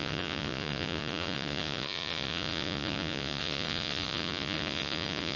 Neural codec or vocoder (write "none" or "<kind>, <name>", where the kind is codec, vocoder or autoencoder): vocoder, Vocos